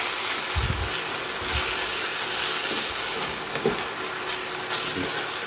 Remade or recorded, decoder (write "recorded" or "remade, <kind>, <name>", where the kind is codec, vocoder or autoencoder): recorded